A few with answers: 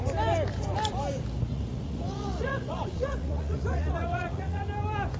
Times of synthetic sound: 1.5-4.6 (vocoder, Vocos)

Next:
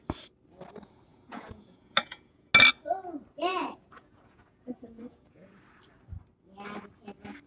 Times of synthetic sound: 1.1-2.5 (vocoder, Vocos); 3.5-5.6

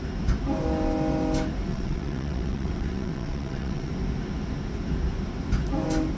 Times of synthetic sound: 1.7-3.9 (vocoder, WaveNeXt)

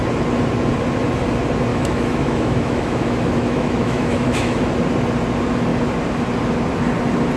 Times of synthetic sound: 1.7-4.6 (autoencoder, DAC-VAE)